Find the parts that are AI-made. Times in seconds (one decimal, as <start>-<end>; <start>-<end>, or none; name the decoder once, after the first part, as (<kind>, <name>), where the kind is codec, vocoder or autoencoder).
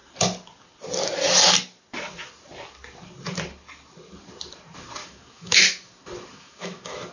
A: 5.0-5.6 (autoencoder, DAC-VAE); 6.3-7.1